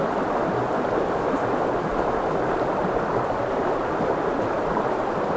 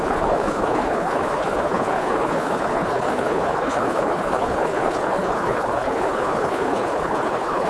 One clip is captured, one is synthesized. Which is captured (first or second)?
first